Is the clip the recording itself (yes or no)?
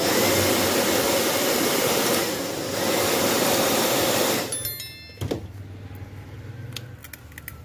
yes